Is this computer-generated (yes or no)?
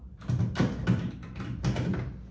no